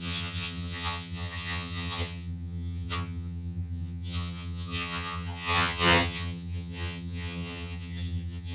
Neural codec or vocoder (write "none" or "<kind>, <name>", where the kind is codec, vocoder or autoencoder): vocoder, HiFi-GAN